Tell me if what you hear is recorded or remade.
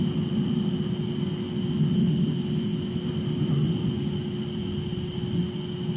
recorded